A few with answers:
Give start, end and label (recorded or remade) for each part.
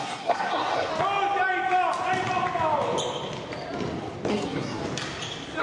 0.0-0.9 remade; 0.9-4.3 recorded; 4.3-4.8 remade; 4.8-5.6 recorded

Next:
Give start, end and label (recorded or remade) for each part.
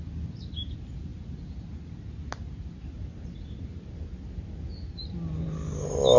0.0-6.2 recorded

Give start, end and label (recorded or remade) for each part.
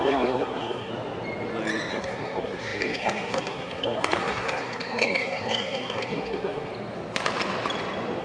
0.0-0.9 remade; 0.9-1.9 recorded; 1.9-6.7 remade; 6.7-8.2 recorded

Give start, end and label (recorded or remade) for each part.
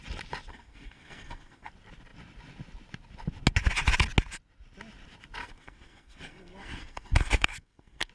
0.0-0.5 recorded; 0.5-1.7 remade; 1.7-5.4 recorded; 5.4-8.1 remade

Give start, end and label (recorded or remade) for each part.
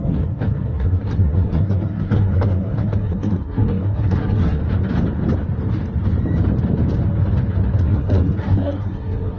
0.0-4.6 remade; 4.6-7.8 recorded; 7.8-9.4 remade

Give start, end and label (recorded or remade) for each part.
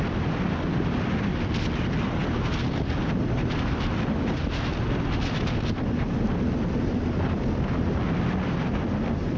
0.0-9.4 recorded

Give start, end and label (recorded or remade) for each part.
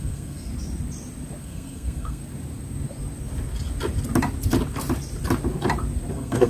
0.0-0.5 remade; 0.5-1.4 recorded; 1.4-2.2 remade; 2.2-6.1 recorded; 6.1-6.5 remade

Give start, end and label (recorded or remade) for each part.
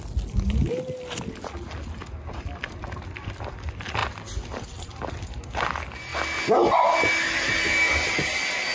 0.0-8.7 recorded